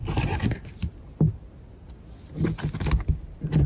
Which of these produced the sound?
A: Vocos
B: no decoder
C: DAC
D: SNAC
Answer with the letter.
B